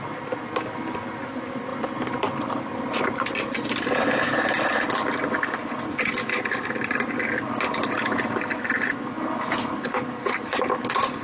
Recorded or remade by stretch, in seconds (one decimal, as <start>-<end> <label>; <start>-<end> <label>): 0.0-11.2 recorded